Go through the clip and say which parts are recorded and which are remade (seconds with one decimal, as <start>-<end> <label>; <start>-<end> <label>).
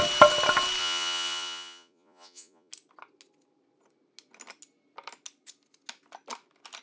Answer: 0.0-0.8 recorded; 0.8-2.7 remade; 2.7-6.8 recorded